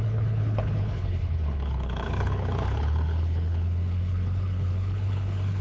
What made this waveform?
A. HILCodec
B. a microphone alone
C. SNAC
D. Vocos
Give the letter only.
A